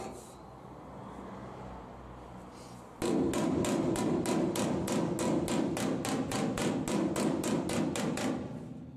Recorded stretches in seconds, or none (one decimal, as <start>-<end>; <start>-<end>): 0.0-9.0